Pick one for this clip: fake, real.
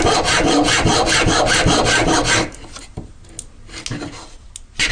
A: real